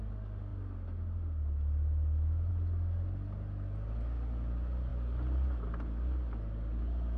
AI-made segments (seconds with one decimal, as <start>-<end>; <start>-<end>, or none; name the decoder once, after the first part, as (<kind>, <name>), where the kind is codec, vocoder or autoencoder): none